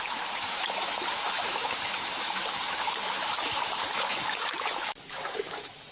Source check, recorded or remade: remade